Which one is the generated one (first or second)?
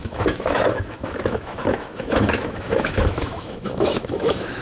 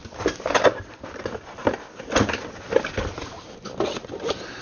first